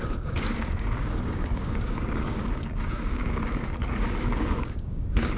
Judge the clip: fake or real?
fake